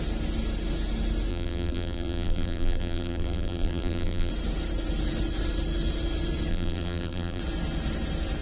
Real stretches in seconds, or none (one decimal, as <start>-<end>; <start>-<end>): 0.0-1.3; 4.3-6.5; 7.4-8.4

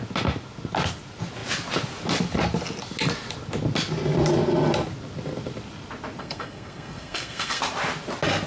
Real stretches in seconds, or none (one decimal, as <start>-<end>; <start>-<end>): 0.0-6.2; 7.6-8.5

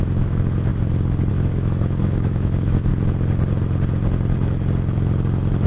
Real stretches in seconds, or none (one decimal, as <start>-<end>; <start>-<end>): 0.7-1.3; 2.9-5.7

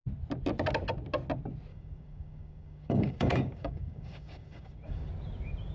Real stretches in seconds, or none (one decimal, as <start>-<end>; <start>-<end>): 0.0-1.7; 5.1-5.7

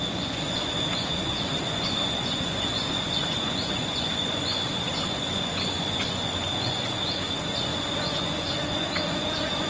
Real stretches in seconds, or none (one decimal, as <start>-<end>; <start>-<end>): none

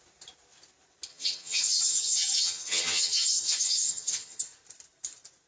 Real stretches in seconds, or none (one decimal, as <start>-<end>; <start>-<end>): 0.0-1.1; 4.4-5.5

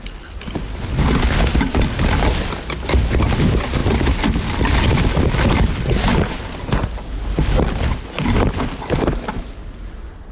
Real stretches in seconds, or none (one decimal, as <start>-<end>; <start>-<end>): 0.0-10.3